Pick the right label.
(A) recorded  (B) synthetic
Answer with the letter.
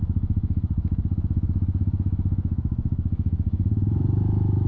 B